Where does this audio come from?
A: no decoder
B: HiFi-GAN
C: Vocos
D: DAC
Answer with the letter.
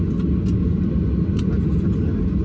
A